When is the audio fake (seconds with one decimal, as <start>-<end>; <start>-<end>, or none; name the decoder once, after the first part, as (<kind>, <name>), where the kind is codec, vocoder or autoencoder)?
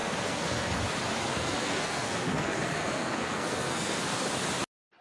0.0-0.8 (codec, SNAC); 1.3-4.3